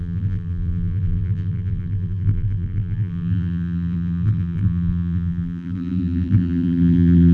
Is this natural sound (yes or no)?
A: no